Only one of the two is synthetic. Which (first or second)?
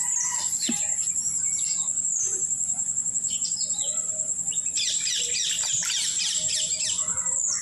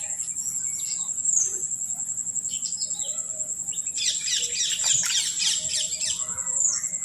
first